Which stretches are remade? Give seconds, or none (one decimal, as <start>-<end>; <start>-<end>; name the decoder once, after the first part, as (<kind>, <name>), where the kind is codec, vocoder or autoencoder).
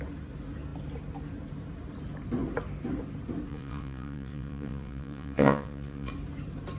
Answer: 3.5-6.1 (vocoder, WaveNeXt)